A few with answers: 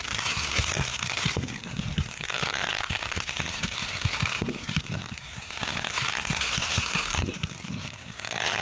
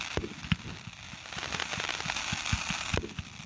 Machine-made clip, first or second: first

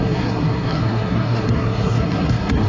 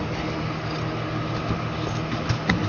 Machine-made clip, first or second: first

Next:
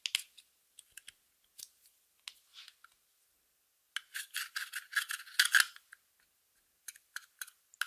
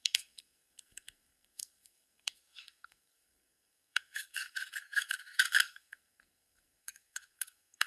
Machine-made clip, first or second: second